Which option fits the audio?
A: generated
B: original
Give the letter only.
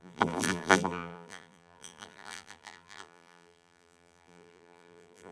A